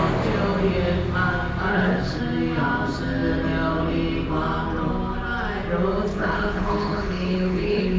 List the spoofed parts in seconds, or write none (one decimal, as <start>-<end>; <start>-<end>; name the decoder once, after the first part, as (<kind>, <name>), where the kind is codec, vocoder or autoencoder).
1.7-2.2 (codec, HILCodec); 6.1-8.0